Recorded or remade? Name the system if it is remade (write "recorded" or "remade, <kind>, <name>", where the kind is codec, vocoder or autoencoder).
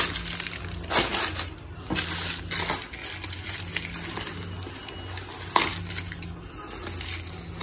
recorded